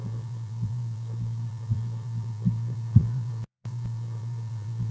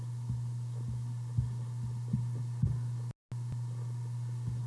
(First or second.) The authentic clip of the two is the second